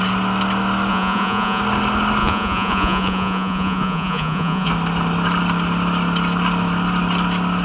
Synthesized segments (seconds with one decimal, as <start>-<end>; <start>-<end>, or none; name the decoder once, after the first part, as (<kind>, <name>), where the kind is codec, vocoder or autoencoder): 0.9-1.6 (vocoder, Vocos); 2.2-4.7